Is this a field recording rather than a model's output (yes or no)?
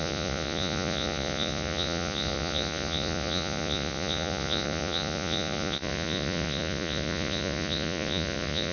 no